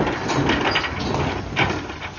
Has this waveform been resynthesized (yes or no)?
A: no